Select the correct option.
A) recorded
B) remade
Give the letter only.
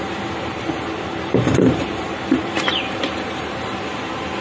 B